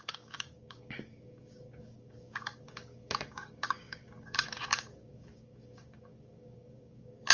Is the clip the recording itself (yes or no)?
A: no